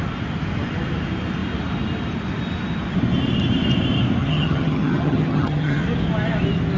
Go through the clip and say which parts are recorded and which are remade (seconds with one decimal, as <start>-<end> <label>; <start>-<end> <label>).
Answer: 0.0-4.2 recorded; 4.2-5.8 remade; 5.8-6.8 recorded